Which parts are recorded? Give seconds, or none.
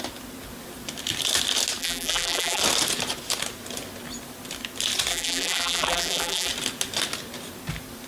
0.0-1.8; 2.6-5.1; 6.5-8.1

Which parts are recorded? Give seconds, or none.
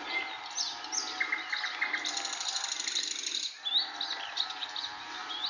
0.0-5.5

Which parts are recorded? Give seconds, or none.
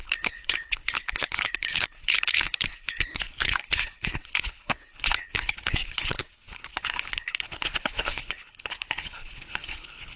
none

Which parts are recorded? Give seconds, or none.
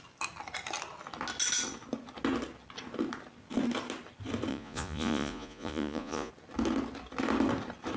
0.0-4.5; 6.3-8.0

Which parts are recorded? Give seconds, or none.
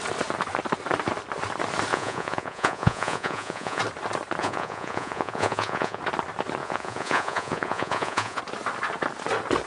0.0-1.9; 3.8-4.4; 6.0-6.6; 8.4-9.7